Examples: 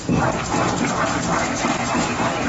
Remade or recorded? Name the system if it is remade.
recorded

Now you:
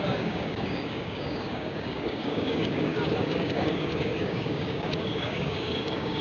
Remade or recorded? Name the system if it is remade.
remade, codec, DAC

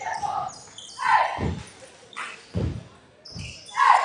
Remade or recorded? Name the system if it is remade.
recorded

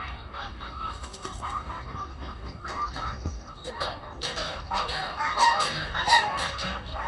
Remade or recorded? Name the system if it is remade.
remade, codec, DAC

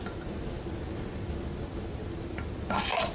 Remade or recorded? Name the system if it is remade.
recorded